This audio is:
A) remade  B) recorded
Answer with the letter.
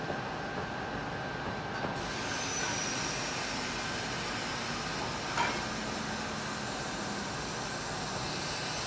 B